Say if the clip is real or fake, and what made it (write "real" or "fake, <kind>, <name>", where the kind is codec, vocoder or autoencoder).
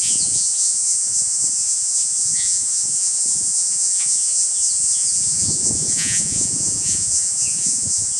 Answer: fake, vocoder, Vocos